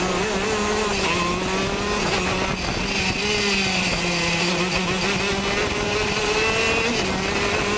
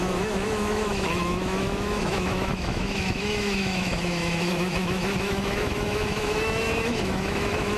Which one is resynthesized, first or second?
second